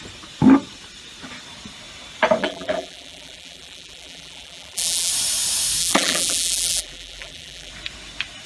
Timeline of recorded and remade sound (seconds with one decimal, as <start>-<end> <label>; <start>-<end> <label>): 0.0-2.4 recorded; 2.4-5.1 remade; 5.1-5.8 recorded; 5.8-7.7 remade; 7.7-8.5 recorded

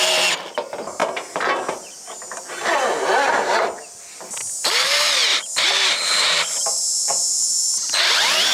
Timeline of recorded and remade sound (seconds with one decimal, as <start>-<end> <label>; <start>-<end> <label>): 0.0-5.3 recorded; 5.3-8.0 remade; 8.0-8.5 recorded